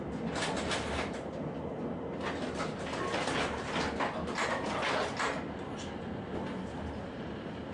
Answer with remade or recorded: recorded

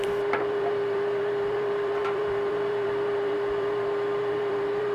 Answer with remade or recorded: remade